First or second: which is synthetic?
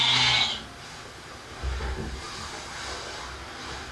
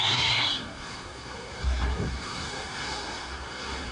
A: second